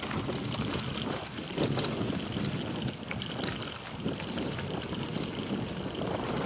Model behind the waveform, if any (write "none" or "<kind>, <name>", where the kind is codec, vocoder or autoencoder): none